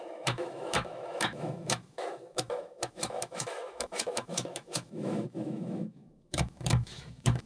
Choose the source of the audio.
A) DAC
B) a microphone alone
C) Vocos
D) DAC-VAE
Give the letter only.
D